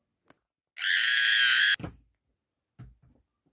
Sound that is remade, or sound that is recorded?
recorded